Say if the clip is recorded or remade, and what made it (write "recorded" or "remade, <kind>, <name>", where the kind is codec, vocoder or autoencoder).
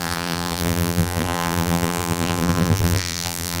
remade, vocoder, BigVGAN v2